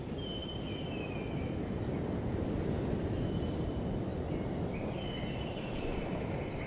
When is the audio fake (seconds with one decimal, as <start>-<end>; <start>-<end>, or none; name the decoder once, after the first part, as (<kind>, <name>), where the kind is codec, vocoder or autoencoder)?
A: 0.0-4.1 (vocoder, BigVGAN v2); 4.7-6.7